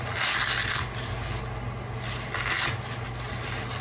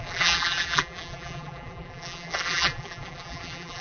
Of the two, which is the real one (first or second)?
first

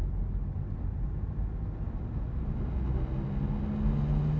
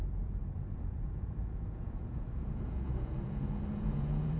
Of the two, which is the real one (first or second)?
first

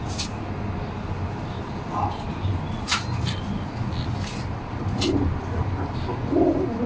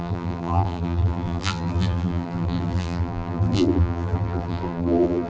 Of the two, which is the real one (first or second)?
first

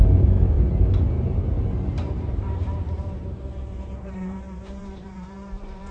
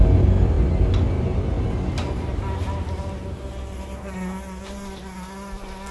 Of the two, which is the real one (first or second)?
second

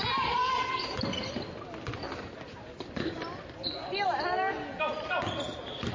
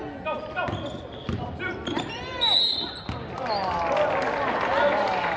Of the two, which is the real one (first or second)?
second